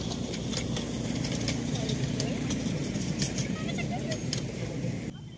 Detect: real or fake fake